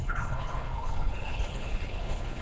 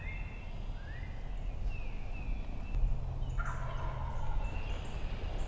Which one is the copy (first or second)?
first